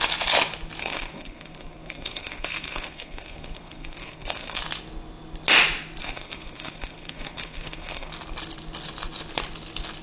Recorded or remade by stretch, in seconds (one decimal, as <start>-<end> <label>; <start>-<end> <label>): 0.0-0.8 recorded; 0.8-4.6 remade; 4.6-6.0 recorded; 6.0-8.1 remade; 8.1-10.0 recorded